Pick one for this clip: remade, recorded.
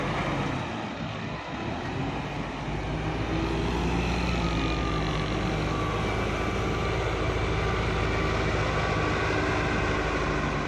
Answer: recorded